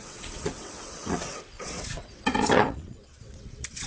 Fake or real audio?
fake